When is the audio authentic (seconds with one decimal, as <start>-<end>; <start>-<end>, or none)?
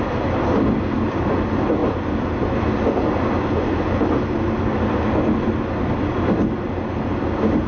0.0-7.7